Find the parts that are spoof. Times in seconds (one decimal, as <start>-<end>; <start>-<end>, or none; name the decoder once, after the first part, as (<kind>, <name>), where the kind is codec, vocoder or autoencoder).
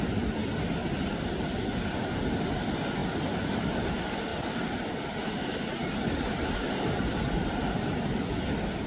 none